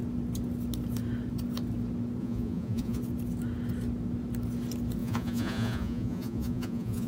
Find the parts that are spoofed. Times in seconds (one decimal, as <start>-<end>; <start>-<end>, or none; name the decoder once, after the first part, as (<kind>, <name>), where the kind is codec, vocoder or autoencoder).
2.2-3.0 (vocoder, Vocos); 5.0-7.1